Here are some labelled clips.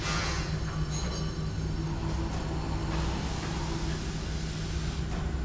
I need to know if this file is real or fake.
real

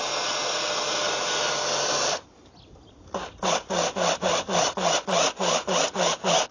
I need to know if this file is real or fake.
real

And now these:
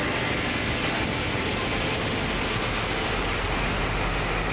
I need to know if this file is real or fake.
real